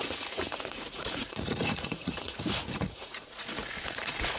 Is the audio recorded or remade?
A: remade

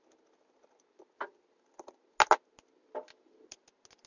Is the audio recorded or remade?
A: recorded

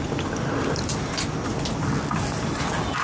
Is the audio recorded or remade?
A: recorded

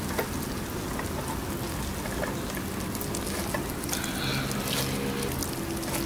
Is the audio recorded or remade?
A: recorded